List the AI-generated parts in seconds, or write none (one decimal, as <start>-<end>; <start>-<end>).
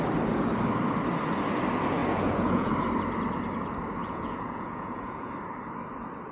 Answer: 2.0-2.7; 4.0-5.3